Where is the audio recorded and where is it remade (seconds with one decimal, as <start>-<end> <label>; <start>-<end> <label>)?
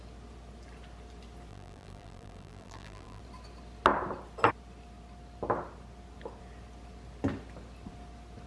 0.0-1.5 recorded; 1.5-3.2 remade; 3.2-8.5 recorded